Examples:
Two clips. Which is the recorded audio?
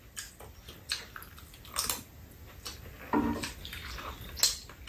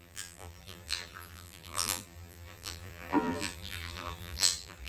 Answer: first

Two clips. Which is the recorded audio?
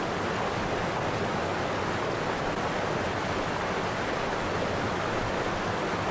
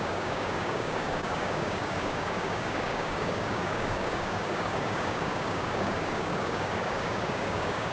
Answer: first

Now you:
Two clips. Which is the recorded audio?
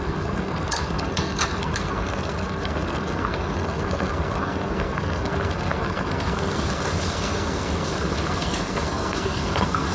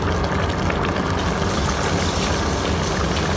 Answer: second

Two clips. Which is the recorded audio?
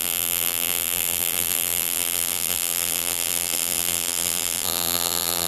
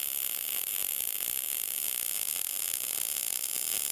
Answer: second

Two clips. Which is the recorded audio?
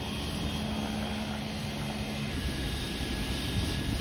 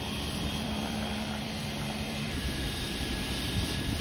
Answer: first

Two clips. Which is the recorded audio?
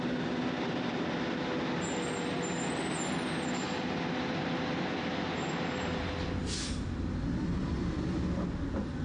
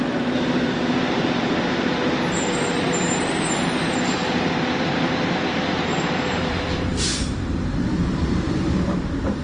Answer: first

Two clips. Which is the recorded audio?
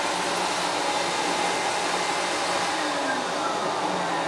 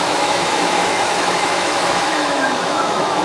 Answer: first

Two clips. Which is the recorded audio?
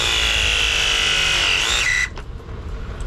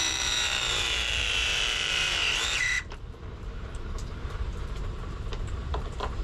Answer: first